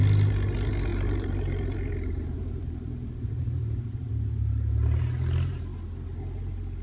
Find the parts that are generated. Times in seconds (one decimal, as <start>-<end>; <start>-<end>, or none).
0.9-5.0